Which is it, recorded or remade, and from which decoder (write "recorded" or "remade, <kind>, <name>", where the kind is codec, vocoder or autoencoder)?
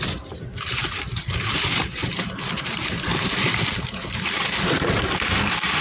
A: remade, vocoder, BigVGAN v2